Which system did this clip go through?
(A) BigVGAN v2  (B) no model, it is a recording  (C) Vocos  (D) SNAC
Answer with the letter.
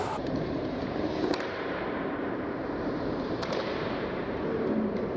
A